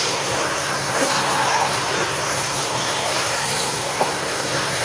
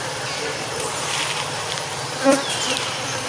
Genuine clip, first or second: second